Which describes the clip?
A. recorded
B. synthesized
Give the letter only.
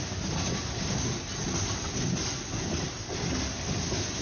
A